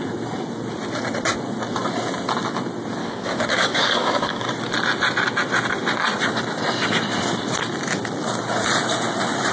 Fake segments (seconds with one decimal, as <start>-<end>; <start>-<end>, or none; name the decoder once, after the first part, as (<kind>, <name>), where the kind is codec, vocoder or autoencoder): 3.0-4.5 (codec, DAC)